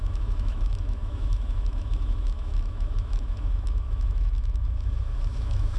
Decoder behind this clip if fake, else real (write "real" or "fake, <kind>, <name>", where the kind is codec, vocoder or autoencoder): fake, autoencoder, DAC-VAE